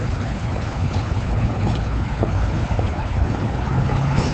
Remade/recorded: remade